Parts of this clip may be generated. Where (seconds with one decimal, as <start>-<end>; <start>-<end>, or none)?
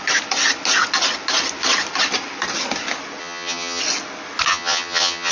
3.2-3.8; 4.5-5.3